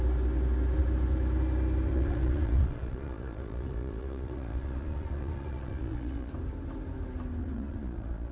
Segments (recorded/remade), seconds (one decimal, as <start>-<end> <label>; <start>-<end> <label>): 0.0-1.9 recorded; 1.9-6.3 remade; 6.3-7.4 recorded; 7.4-8.3 remade